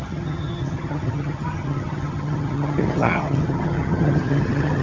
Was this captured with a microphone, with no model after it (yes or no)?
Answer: no